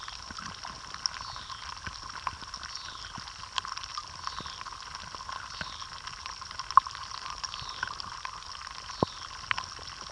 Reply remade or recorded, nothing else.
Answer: recorded